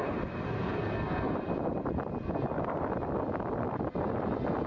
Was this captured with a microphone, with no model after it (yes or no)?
yes